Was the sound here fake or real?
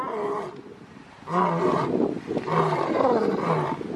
real